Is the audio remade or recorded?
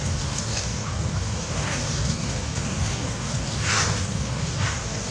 remade